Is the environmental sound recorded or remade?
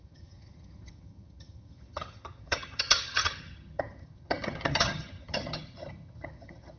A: remade